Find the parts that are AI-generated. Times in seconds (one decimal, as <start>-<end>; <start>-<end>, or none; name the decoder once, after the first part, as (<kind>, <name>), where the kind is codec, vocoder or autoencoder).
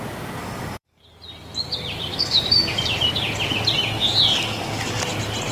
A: 0.4-1.0 (codec, DAC); 2.1-2.8; 4.3-5.0